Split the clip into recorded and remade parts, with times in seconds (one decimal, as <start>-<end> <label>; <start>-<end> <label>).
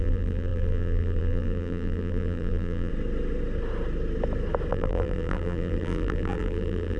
0.0-2.9 remade; 2.9-4.7 recorded; 4.7-7.0 remade